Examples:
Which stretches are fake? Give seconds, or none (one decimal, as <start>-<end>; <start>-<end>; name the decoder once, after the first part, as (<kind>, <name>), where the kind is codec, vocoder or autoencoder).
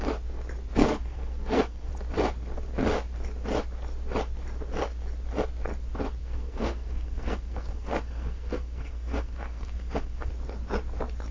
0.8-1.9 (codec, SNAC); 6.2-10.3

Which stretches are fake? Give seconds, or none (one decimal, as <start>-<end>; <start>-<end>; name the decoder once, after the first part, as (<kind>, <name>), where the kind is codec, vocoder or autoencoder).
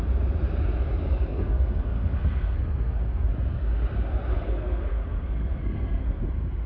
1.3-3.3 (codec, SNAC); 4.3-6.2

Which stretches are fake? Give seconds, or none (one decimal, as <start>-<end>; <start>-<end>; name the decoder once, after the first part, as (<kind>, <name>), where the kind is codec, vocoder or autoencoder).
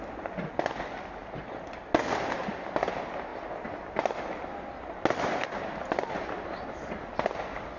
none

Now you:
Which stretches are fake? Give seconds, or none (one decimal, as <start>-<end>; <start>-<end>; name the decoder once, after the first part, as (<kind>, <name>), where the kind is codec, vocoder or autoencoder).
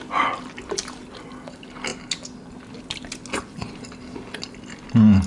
none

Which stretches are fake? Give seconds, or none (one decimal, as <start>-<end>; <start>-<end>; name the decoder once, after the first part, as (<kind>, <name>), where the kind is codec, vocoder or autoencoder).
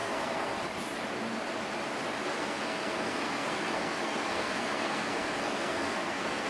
0.0-0.6 (codec, SNAC); 2.3-6.5